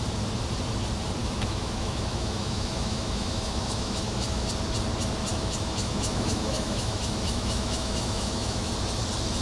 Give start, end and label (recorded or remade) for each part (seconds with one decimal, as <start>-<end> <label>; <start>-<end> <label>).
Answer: 0.0-1.2 recorded; 1.2-4.5 remade; 4.5-5.3 recorded; 5.3-8.7 remade; 8.7-9.4 recorded